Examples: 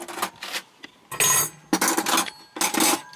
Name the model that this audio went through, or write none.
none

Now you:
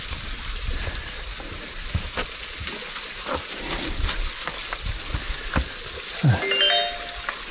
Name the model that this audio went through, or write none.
none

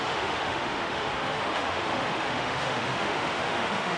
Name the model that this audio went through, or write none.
autoencoder, DAC-VAE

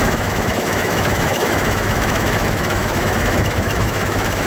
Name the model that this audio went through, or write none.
autoencoder, DAC-VAE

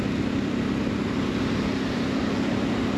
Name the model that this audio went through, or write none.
none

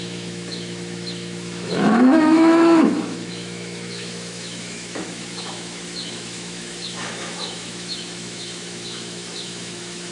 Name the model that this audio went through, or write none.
autoencoder, DAC-VAE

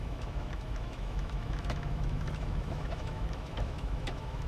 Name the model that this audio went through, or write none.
autoencoder, DAC-VAE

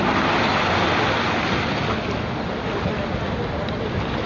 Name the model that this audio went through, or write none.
none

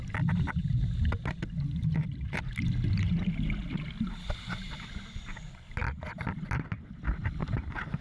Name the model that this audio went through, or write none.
none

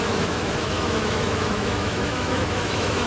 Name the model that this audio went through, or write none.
autoencoder, DAC-VAE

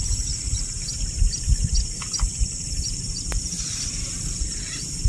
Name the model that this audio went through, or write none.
none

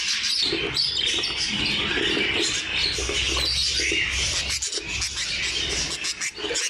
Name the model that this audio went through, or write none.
none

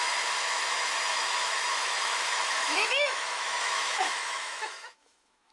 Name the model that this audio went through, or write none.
autoencoder, DAC-VAE